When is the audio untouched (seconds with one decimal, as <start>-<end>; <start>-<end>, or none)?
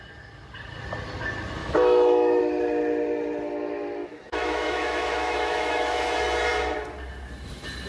0.0-1.6; 2.4-4.0; 6.1-7.9